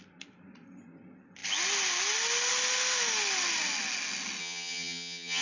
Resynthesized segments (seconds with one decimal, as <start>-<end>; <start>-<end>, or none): 4.4-5.4